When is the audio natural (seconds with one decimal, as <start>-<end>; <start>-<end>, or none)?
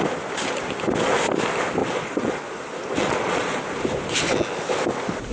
0.0-1.8; 2.6-3.0; 3.6-5.3